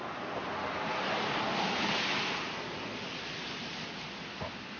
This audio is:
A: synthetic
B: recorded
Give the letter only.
B